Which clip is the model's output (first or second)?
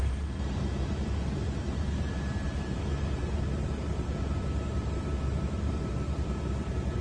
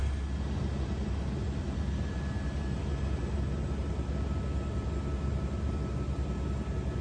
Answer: first